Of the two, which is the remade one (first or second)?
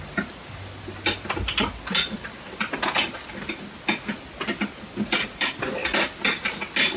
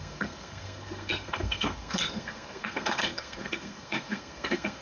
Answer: second